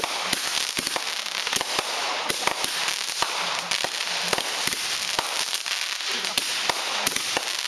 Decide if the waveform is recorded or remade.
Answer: recorded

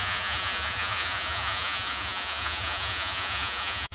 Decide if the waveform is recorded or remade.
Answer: remade